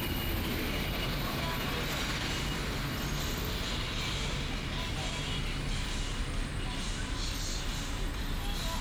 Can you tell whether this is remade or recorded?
recorded